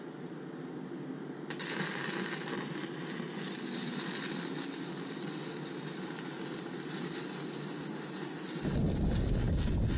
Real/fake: real